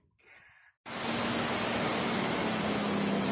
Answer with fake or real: real